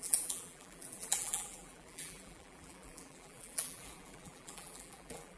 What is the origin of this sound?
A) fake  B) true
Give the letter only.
A